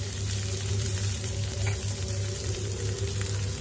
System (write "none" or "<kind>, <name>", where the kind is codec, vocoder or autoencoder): vocoder, BigVGAN v2